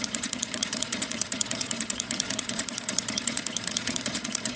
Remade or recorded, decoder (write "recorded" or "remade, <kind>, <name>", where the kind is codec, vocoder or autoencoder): remade, vocoder, Vocos